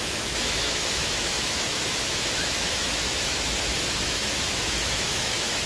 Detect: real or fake fake